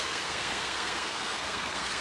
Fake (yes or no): yes